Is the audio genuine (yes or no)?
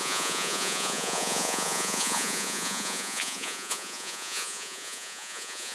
no